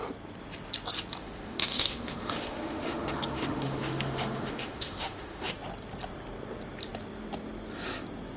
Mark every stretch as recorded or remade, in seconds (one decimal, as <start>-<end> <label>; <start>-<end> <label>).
0.0-1.2 recorded; 1.2-5.5 remade; 5.5-8.4 recorded